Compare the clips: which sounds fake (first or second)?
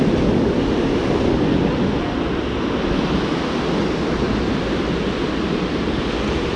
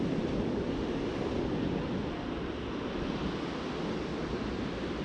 second